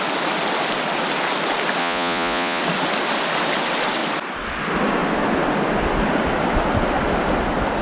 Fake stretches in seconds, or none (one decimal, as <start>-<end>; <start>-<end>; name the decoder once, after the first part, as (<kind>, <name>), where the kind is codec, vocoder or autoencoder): 1.8-2.6 (vocoder, Vocos)